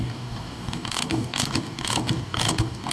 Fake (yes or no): yes